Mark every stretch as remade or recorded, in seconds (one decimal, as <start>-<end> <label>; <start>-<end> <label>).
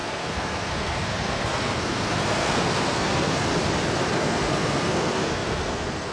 0.0-3.5 remade; 3.5-4.1 recorded; 4.1-6.1 remade